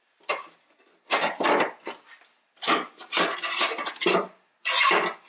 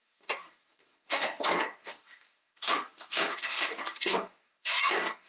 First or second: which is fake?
second